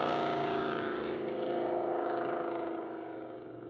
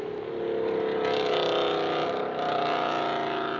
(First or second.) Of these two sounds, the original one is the second